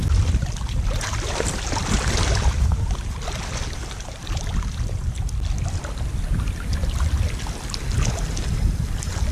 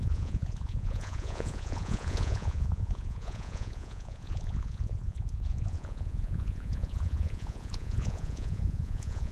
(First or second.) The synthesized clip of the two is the second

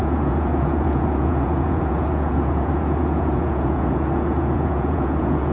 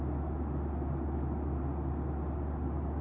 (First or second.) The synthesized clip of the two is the first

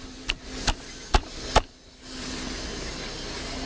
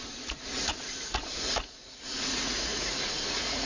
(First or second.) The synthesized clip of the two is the second